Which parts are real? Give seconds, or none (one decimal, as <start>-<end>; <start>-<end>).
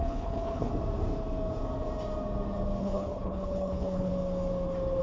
0.7-2.8; 4.1-5.0